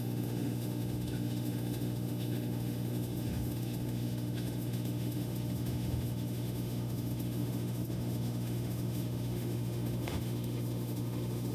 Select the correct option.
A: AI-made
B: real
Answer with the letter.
A